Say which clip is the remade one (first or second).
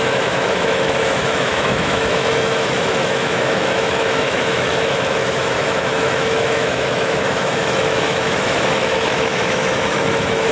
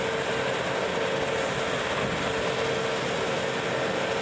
first